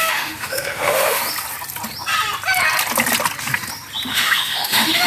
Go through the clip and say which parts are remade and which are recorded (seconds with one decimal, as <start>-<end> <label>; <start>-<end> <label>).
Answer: 0.0-1.2 remade; 1.2-4.1 recorded; 4.1-5.1 remade

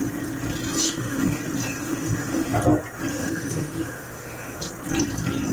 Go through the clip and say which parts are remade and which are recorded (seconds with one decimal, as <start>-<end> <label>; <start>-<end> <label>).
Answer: 0.0-0.8 recorded; 0.8-1.4 remade; 1.4-1.8 recorded; 1.8-2.6 remade; 2.6-3.1 recorded; 3.1-4.7 remade; 4.7-5.5 recorded

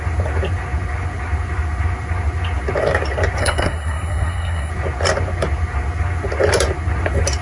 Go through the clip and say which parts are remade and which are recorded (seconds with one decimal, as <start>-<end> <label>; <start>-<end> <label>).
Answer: 0.0-3.4 recorded; 3.4-4.7 remade; 4.7-7.4 recorded

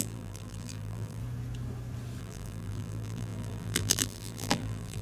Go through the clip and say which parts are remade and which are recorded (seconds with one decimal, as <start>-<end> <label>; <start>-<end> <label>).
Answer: 0.0-1.2 remade; 1.2-2.2 recorded; 2.2-5.0 remade